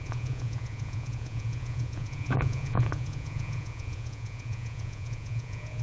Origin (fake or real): fake